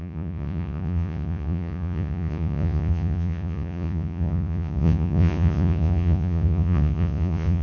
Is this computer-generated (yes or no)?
yes